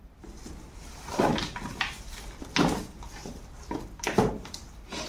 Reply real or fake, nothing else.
real